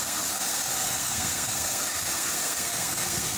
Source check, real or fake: fake